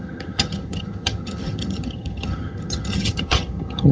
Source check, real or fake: fake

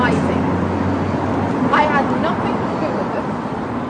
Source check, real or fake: real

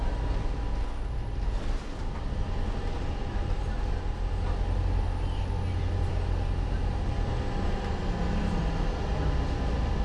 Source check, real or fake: real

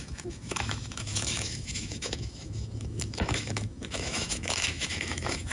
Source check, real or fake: fake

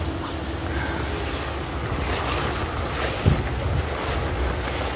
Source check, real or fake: real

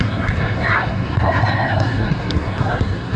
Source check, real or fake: fake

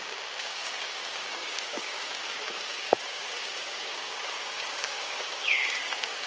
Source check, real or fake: fake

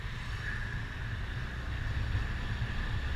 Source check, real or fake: real